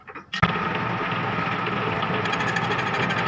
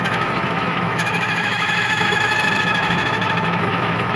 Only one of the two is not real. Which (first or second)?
second